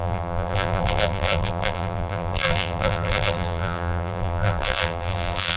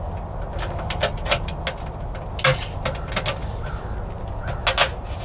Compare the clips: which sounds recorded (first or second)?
second